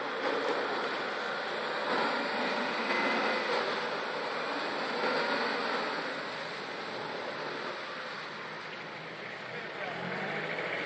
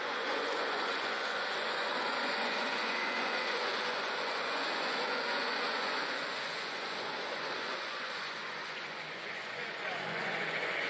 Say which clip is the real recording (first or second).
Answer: first